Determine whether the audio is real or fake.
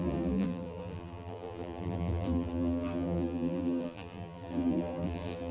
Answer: fake